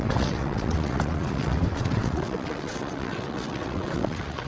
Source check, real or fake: fake